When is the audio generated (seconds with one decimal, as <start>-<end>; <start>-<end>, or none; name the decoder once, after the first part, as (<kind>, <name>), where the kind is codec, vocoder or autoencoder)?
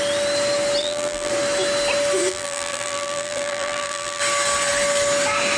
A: 0.8-1.3 (vocoder, BigVGAN v2); 2.3-4.2